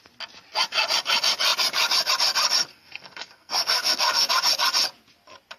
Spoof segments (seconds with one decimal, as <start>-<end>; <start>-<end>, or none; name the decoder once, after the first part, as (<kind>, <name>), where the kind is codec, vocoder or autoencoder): 2.7-4.3 (codec, SNAC)